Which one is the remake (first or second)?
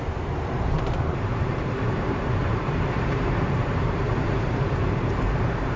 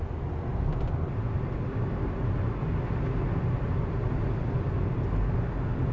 first